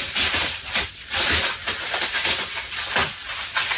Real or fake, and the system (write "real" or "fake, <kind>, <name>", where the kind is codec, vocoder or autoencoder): real